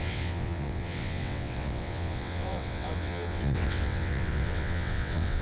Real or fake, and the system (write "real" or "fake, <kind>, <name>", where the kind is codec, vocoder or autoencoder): fake, vocoder, WaveNeXt